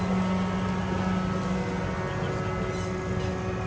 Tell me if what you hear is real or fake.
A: real